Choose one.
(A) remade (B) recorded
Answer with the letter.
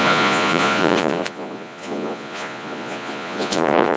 A